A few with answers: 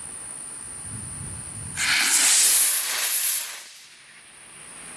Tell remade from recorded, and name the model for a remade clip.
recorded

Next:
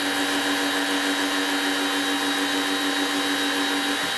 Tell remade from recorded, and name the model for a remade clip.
recorded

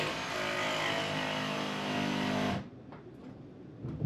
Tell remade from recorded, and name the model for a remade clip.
recorded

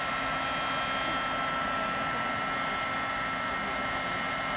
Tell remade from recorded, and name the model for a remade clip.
recorded